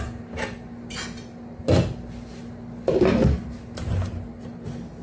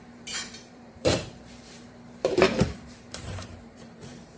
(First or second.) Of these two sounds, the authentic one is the first